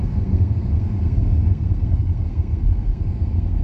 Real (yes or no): no